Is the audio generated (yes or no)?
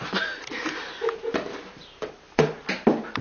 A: no